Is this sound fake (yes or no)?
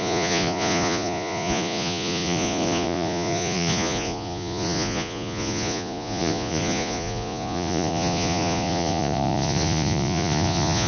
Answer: yes